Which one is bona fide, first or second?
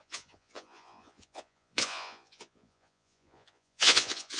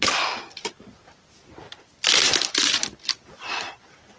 second